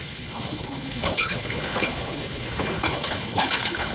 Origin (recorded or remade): remade